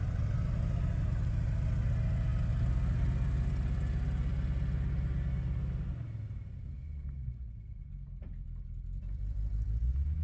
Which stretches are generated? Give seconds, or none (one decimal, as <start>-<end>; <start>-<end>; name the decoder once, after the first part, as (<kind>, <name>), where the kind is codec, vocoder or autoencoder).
none